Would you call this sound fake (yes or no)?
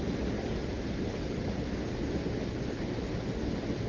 no